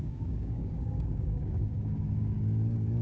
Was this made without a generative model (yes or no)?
no